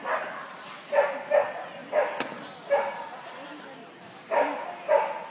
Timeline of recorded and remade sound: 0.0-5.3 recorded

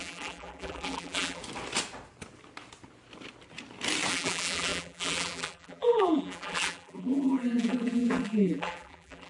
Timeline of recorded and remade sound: 0.0-1.4 remade; 1.4-4.1 recorded; 4.1-9.3 remade

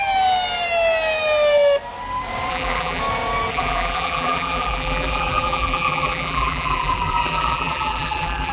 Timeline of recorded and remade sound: 0.0-2.5 recorded; 2.5-3.0 remade; 3.0-3.5 recorded; 3.5-8.5 remade

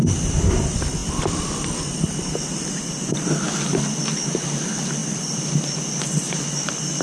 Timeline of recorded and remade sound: 0.0-5.0 recorded; 5.0-5.8 remade; 5.8-7.0 recorded

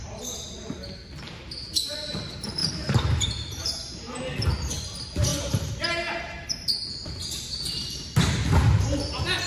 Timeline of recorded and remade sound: 0.0-2.6 recorded; 2.6-4.2 remade; 4.2-9.5 recorded